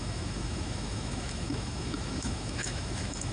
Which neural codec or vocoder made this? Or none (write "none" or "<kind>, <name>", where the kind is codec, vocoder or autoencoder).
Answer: autoencoder, DAC-VAE